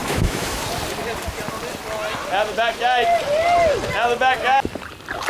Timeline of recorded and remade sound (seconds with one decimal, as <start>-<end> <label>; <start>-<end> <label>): 0.0-0.6 remade; 0.6-5.3 recorded